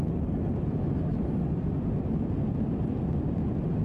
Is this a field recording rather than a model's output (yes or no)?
yes